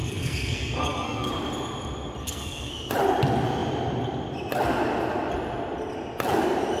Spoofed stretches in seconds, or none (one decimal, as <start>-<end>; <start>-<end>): 0.0-1.3; 2.2-2.9